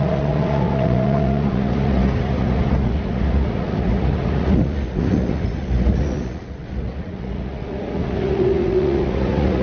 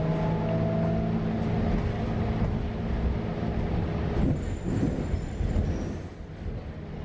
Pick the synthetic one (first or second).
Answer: first